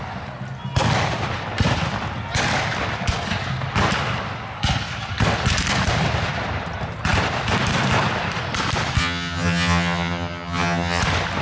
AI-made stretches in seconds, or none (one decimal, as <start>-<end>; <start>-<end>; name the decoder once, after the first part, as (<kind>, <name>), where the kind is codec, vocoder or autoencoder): 9.0-11.0 (vocoder, HiFi-GAN)